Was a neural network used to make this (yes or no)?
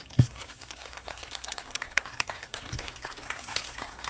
yes